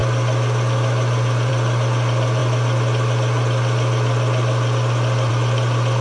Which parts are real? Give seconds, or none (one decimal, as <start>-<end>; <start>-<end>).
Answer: 0.0-6.0